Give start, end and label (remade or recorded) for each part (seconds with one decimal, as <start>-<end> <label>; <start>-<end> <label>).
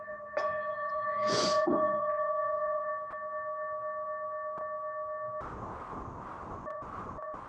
0.0-2.9 remade; 2.9-6.5 recorded; 6.5-7.5 remade